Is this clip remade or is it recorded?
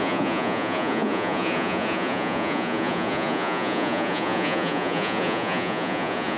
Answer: remade